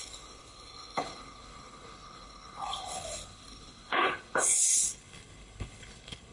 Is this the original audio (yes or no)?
no